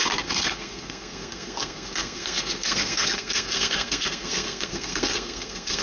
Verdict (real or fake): fake